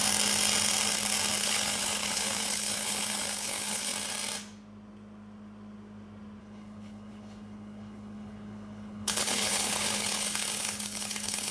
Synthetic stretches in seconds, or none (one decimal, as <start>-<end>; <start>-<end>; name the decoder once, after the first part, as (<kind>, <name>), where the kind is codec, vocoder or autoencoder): 1.4-3.9 (codec, HILCodec); 6.4-11.5

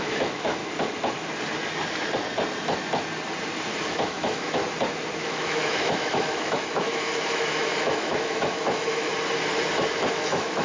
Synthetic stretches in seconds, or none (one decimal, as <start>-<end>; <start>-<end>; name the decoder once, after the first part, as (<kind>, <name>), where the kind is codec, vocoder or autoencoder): 0.0-0.6 (autoencoder, DAC-VAE); 3.9-4.6; 5.2-9.1; 10.1-10.6